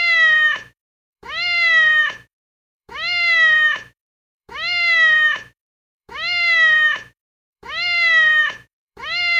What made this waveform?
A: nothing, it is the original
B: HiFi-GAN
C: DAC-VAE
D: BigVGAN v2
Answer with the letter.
C